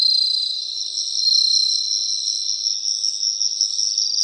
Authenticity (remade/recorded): recorded